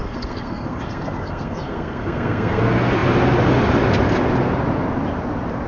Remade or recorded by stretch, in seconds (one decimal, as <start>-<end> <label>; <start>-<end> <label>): 0.0-2.6 remade; 2.6-5.7 recorded